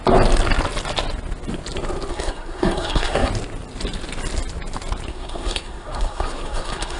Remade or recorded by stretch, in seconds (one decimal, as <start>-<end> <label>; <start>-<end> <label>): 0.0-2.1 recorded; 2.1-3.3 remade; 3.3-5.1 recorded; 5.1-7.0 remade